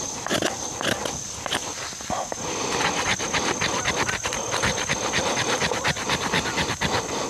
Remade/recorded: recorded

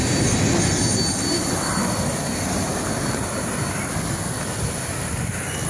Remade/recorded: recorded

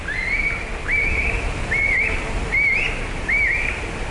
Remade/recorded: recorded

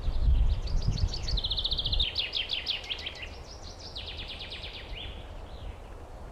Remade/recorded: recorded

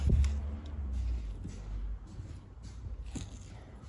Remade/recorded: recorded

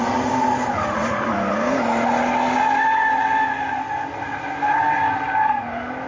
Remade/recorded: recorded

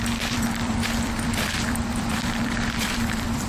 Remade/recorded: remade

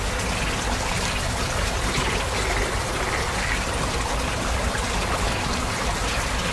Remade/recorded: recorded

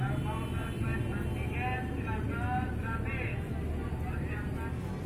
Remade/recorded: recorded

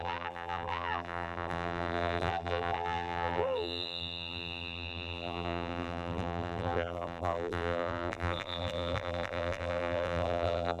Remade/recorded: remade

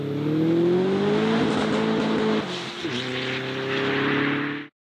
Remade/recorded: recorded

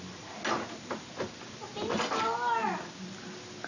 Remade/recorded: recorded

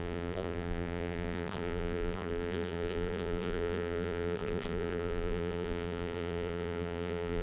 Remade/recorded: remade